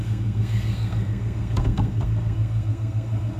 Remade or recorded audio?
remade